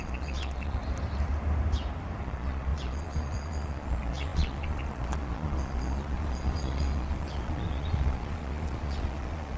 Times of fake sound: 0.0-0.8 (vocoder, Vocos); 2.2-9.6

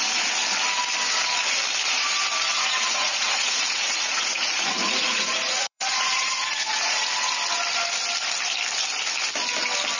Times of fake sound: 2.5-7.3 (vocoder, Vocos)

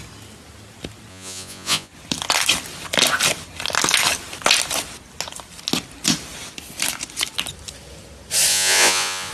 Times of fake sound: 1.1-1.9 (vocoder, Vocos); 8.5-9.3

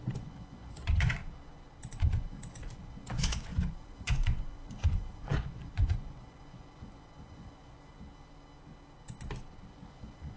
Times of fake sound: 0.0-1.2 (vocoder, Vocos); 1.9-7.9; 9.7-10.4

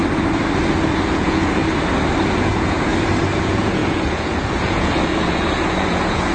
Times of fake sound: 1.1-1.6 (vocoder, Vocos); 2.4-2.9; 3.4-6.3